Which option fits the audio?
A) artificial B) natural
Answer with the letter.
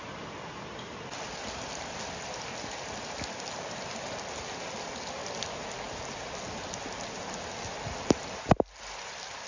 B